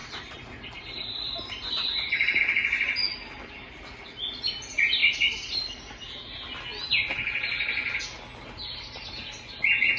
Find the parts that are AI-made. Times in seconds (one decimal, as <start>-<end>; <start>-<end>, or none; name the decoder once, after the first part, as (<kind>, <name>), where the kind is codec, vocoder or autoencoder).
0.0-2.4 (vocoder, BigVGAN v2); 5.0-6.2